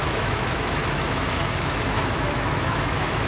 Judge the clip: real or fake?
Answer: fake